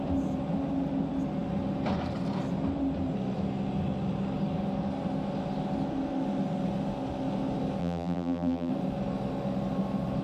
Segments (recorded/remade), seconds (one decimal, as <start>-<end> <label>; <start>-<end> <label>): 0.0-7.8 recorded; 7.8-8.7 remade; 8.7-10.2 recorded